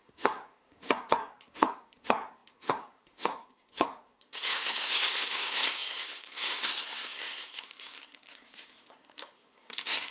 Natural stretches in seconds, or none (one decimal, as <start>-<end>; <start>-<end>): none